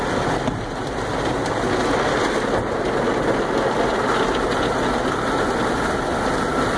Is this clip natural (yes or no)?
yes